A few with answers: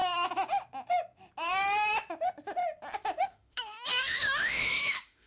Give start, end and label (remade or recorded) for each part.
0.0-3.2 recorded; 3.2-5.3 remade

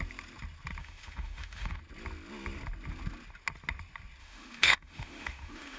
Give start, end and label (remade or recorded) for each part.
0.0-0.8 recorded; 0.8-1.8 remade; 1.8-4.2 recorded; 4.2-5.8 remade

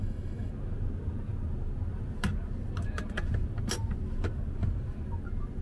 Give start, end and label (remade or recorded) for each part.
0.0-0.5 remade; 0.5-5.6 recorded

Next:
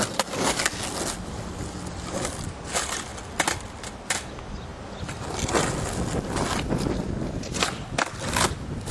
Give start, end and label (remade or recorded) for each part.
0.0-8.9 recorded

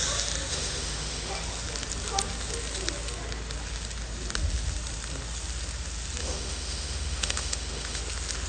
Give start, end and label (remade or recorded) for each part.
0.0-0.5 recorded; 0.5-1.3 remade; 1.3-6.2 recorded; 6.2-8.0 remade; 8.0-8.5 recorded

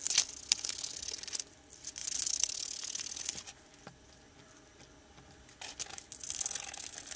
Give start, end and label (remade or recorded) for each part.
0.0-7.2 recorded

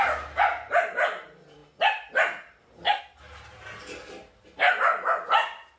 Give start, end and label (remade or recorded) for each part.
0.0-5.8 recorded